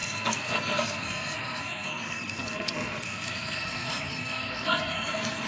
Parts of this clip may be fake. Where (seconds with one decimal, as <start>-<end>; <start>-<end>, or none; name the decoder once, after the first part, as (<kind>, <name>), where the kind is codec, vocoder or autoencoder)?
0.0-5.5 (codec, SNAC)